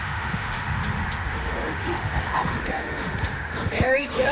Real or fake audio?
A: fake